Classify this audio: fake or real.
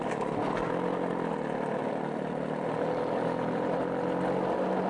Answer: real